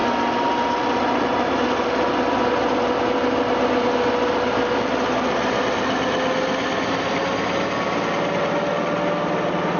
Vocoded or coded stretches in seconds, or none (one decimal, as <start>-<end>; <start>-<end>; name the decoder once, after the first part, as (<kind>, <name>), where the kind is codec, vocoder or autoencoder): none